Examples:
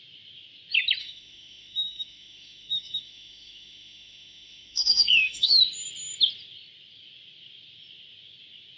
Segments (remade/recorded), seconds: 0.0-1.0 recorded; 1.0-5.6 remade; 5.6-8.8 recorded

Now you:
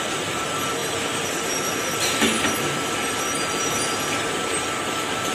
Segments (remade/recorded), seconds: 0.0-5.3 recorded

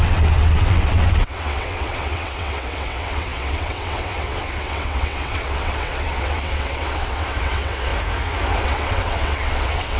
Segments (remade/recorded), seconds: 0.0-7.9 remade; 7.9-8.6 recorded; 8.6-10.0 remade